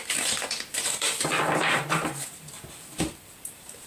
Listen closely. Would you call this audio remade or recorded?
remade